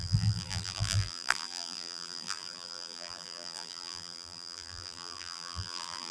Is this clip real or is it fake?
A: fake